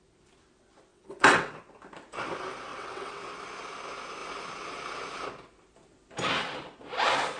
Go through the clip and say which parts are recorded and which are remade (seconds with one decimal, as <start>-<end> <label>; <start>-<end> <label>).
0.0-0.9 recorded; 0.9-1.6 remade; 1.6-2.7 recorded; 2.7-3.2 remade; 3.2-7.4 recorded